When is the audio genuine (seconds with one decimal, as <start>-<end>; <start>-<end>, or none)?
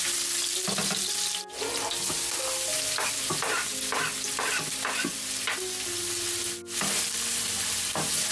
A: 0.0-8.3